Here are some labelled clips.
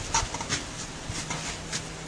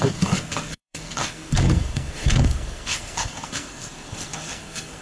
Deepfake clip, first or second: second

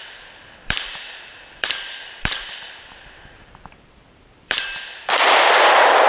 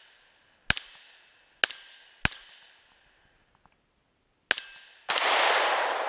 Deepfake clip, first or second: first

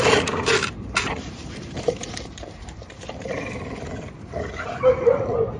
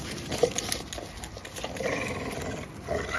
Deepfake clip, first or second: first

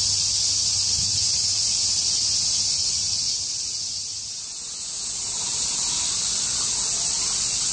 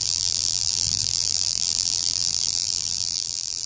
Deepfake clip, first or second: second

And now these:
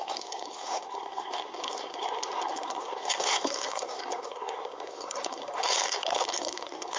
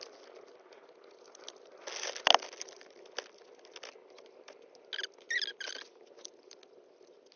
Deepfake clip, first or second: first